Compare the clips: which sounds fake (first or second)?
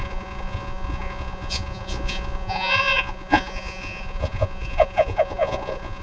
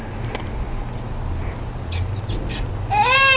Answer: first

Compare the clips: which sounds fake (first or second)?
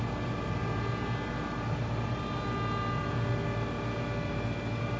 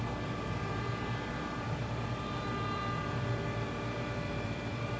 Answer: second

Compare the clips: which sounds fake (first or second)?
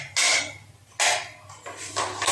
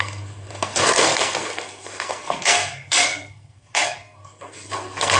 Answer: second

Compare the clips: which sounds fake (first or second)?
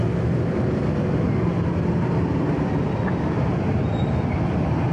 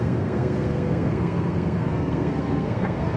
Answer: second